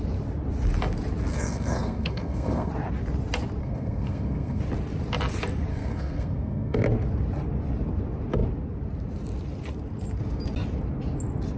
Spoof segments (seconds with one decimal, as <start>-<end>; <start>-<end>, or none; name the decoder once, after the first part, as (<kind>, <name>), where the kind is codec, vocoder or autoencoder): 1.3-2.7 (codec, SNAC); 3.6-4.6; 5.7-6.8